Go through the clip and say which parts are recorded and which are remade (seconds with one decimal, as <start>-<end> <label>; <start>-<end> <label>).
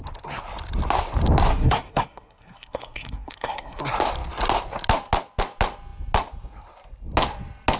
0.0-1.5 recorded; 1.5-3.8 remade; 3.8-7.8 recorded